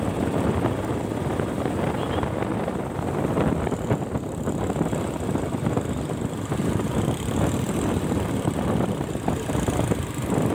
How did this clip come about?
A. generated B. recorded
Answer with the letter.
B